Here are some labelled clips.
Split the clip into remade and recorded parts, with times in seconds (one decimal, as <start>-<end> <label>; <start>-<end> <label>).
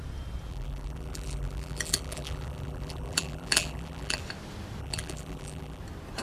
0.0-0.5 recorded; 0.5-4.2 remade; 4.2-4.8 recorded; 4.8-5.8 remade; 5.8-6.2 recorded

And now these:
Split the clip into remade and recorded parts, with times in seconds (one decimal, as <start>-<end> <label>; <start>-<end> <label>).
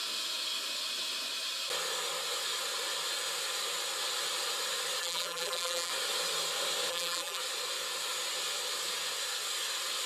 0.0-5.0 recorded; 5.0-5.9 remade; 5.9-6.9 recorded; 6.9-7.4 remade; 7.4-10.1 recorded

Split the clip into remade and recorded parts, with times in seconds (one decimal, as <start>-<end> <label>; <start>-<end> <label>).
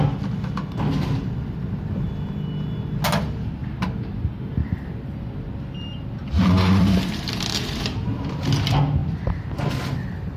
0.0-10.4 recorded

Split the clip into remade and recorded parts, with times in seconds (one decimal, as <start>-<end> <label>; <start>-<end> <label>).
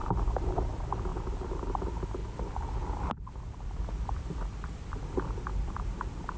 0.0-0.5 remade; 0.5-1.1 recorded; 1.1-1.7 remade; 1.7-2.2 recorded; 2.2-6.0 remade; 6.0-6.4 recorded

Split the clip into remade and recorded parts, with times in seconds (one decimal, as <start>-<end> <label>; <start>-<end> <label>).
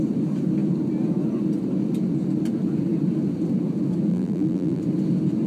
0.0-4.1 recorded; 4.1-4.8 remade; 4.8-5.5 recorded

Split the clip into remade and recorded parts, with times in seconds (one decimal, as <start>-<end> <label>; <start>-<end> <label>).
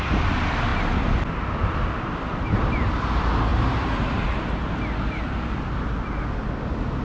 0.0-3.5 recorded; 3.5-4.4 remade; 4.4-7.0 recorded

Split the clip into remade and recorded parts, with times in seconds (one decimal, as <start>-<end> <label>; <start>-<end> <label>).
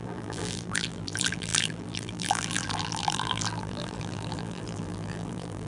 0.0-5.7 remade